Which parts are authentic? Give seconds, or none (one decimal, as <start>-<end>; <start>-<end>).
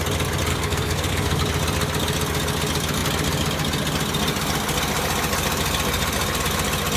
0.0-0.5; 1.4-7.0